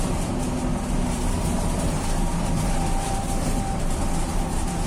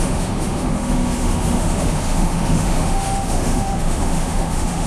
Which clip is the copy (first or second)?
second